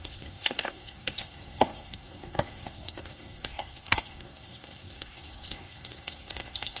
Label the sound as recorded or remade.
remade